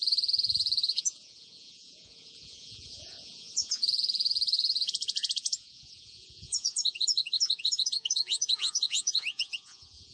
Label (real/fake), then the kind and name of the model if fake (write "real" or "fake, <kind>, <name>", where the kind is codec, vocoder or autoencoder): fake, vocoder, Vocos